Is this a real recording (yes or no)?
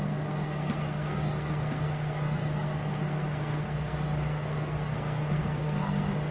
no